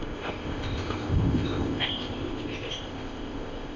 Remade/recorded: remade